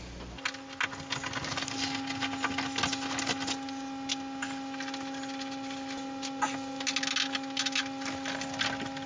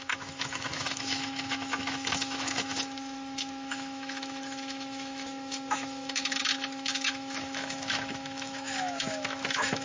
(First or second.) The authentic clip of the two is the first